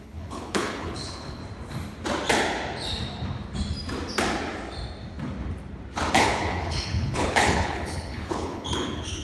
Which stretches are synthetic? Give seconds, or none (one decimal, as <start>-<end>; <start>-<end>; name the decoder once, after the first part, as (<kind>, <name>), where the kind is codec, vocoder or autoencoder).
0.0-1.4 (codec, HILCodec); 6.1-9.2

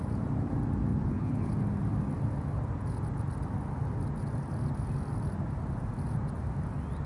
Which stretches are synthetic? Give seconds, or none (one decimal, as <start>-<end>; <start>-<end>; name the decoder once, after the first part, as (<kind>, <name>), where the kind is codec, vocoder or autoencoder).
0.9-1.5 (codec, HILCodec)

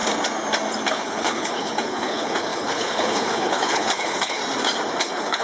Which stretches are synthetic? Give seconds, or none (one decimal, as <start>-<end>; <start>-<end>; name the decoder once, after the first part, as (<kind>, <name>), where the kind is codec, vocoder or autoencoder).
0.9-4.4 (codec, HILCodec); 5.0-5.4

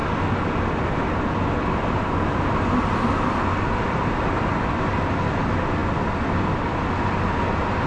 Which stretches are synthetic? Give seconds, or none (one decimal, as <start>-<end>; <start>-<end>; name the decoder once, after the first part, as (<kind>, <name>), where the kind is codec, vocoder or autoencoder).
none

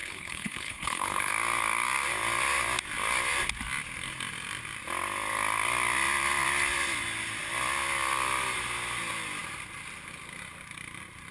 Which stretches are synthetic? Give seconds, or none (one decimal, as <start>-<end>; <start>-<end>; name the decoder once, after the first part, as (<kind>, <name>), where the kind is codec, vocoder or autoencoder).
0.0-1.3 (codec, HILCodec)

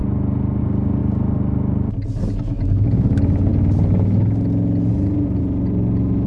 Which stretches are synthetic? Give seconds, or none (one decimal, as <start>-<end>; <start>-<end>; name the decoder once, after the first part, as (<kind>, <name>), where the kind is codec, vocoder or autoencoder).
none

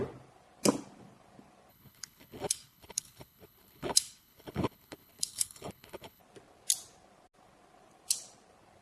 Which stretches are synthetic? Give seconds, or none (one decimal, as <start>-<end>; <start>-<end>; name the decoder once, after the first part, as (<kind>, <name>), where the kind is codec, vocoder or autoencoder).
1.7-6.2 (codec, HILCodec)